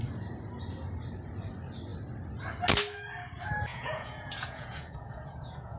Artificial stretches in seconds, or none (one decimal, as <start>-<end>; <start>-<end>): 3.7-5.8